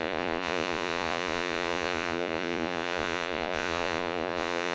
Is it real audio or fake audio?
fake